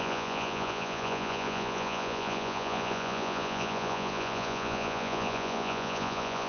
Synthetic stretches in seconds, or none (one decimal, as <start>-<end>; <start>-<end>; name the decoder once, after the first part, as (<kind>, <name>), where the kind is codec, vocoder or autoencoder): 0.0-6.5 (vocoder, Vocos)